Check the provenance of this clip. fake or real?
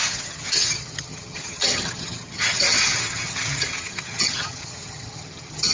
fake